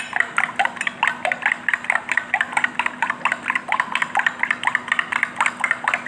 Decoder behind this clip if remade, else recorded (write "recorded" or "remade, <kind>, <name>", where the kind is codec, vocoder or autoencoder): recorded